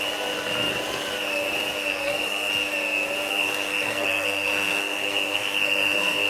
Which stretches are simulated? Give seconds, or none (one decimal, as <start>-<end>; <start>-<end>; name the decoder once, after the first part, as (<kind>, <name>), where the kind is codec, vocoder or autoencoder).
1.9-2.5 (codec, SNAC); 3.3-6.3